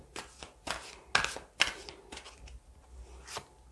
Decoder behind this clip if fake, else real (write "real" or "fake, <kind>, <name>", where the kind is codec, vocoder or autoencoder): real